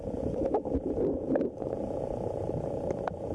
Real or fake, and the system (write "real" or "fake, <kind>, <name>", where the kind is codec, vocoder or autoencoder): real